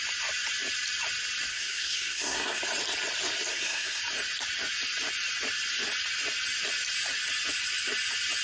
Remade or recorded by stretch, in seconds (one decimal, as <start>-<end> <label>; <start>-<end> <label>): 0.0-1.5 recorded; 1.5-2.6 remade; 2.6-3.5 recorded; 3.5-4.0 remade; 4.0-8.4 recorded